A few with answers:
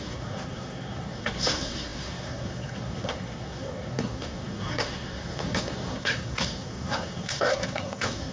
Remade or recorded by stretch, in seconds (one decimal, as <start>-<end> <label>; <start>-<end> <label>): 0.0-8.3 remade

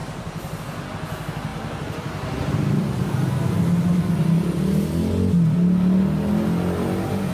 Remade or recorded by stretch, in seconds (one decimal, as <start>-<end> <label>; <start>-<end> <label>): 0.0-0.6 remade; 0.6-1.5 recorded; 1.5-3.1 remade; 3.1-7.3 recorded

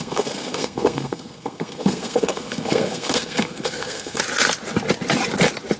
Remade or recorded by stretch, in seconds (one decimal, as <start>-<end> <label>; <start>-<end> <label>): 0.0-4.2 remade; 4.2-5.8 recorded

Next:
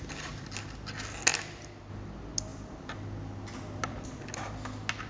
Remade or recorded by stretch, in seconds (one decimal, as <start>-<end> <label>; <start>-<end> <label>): 0.0-5.1 recorded